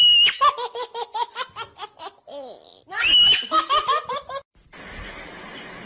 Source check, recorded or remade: recorded